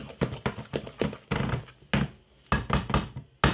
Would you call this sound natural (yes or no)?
yes